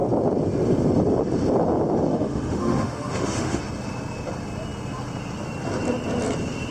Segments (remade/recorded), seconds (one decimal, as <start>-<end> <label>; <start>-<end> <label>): 0.0-2.1 recorded; 2.1-3.6 remade; 3.6-6.7 recorded